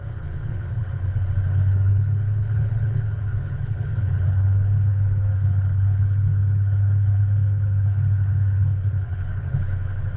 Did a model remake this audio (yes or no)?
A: yes